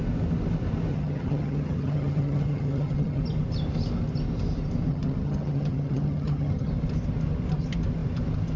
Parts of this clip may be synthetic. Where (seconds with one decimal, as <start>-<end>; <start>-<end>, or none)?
0.9-3.2; 4.9-6.7